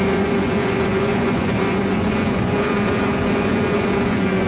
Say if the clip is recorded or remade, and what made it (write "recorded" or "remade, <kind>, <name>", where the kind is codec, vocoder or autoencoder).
remade, vocoder, Vocos